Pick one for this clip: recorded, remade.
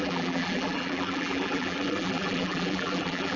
remade